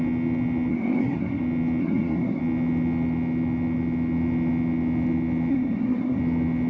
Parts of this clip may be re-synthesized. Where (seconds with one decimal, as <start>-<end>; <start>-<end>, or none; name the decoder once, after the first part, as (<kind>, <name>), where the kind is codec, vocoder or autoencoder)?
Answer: 0.7-1.4 (codec, SNAC); 1.8-2.4; 5.5-6.2